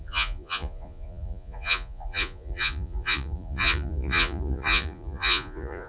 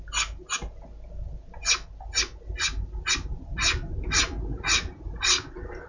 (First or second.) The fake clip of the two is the first